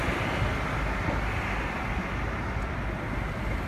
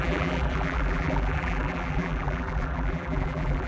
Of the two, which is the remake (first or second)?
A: second